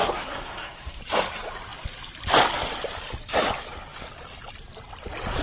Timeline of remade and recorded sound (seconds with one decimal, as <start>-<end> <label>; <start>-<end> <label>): 0.0-1.0 remade; 1.0-5.4 recorded